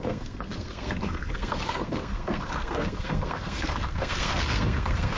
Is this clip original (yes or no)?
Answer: no